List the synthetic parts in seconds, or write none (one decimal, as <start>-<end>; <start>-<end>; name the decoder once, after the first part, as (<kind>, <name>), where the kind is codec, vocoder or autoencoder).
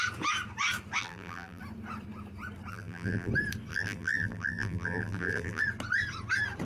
1.0-1.6 (vocoder, BigVGAN v2); 2.7-3.3; 3.7-5.6